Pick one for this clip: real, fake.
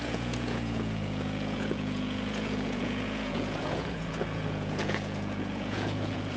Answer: fake